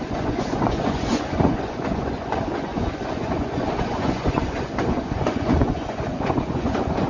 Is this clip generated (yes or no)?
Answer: yes